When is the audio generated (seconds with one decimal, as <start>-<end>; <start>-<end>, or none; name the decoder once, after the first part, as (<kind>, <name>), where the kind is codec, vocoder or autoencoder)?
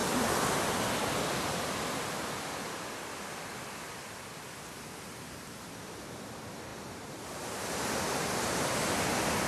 0.0-6.7 (vocoder, BigVGAN v2); 7.7-9.5